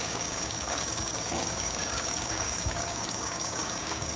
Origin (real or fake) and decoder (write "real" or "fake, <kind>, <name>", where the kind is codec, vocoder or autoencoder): fake, codec, DAC